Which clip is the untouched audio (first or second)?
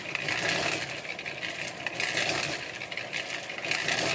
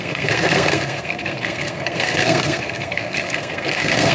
first